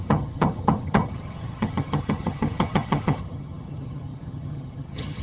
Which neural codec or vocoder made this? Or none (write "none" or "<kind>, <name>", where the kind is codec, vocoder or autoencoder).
vocoder, HiFi-GAN